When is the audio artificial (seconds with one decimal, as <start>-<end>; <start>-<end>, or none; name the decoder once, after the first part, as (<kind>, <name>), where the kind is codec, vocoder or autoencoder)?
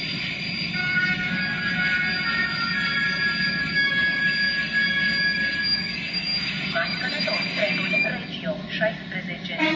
0.8-1.7 (codec, DAC); 3.6-4.2; 5.6-8.1